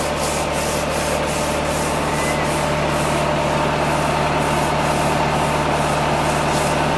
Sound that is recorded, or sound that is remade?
recorded